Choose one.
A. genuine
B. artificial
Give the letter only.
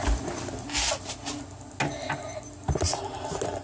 A